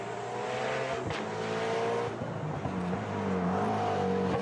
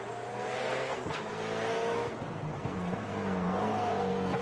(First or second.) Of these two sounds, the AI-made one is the second